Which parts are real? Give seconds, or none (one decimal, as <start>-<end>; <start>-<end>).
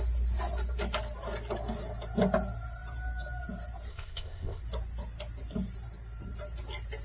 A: 0.0-3.9; 4.6-7.0